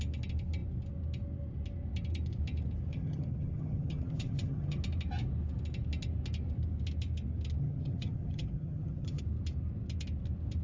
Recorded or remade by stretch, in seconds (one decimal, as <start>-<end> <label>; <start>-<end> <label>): 0.0-2.9 recorded; 2.9-4.8 remade; 4.8-7.6 recorded; 7.6-9.2 remade; 9.2-10.6 recorded